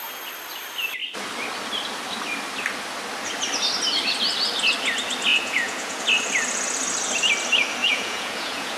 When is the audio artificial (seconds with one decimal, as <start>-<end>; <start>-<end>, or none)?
5.3-6.0; 7.8-8.8